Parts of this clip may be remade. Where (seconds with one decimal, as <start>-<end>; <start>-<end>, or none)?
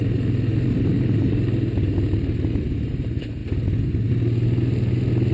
none